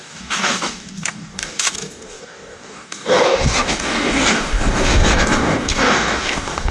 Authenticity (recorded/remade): remade